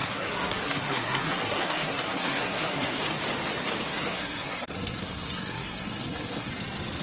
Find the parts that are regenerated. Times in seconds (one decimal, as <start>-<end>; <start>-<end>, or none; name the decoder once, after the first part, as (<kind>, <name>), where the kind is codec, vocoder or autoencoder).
0.0-3.0 (codec, SNAC); 3.9-6.5